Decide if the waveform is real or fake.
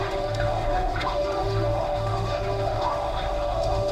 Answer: fake